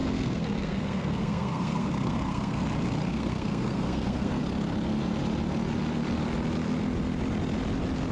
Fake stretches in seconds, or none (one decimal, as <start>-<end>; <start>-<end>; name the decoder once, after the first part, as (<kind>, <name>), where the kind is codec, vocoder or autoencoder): 0.0-2.6 (codec, SNAC); 3.1-4.4